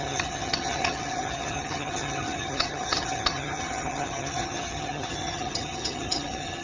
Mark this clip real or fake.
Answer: fake